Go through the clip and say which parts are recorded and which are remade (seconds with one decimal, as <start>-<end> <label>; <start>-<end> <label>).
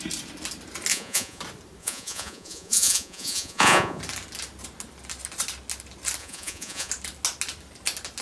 0.0-0.9 recorded; 0.9-1.4 remade; 1.4-1.8 recorded; 1.8-4.0 remade; 4.0-6.2 recorded; 6.2-6.9 remade; 6.9-8.2 recorded